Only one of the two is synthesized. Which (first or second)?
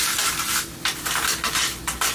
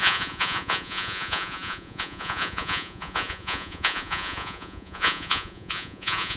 second